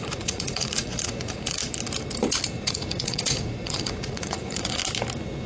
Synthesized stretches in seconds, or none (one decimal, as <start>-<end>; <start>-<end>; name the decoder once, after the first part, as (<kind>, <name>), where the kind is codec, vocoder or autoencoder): 0.0-1.6 (vocoder, Vocos); 2.5-4.8